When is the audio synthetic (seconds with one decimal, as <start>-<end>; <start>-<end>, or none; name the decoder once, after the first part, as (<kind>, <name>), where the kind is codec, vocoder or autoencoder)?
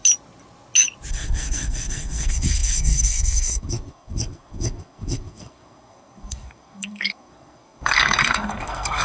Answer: 1.1-9.0 (codec, SNAC)